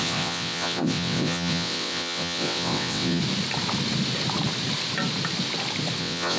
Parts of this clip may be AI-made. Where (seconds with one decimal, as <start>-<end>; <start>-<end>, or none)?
0.0-3.2; 6.0-6.4